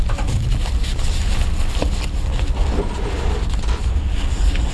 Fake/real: real